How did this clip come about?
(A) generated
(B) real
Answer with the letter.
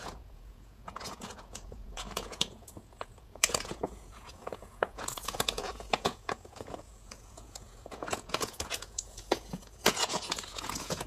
A